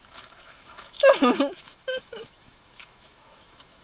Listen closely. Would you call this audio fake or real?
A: fake